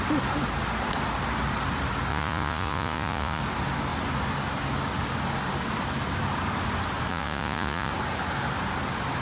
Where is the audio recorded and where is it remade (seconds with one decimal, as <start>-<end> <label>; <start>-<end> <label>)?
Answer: 0.0-2.1 recorded; 2.1-3.4 remade; 3.4-7.1 recorded; 7.1-7.9 remade; 7.9-9.2 recorded